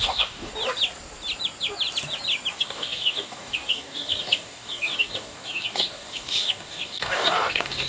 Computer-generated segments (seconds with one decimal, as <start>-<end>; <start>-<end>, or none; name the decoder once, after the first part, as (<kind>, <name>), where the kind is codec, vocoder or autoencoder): 0.0-0.5 (codec, DAC); 2.5-7.9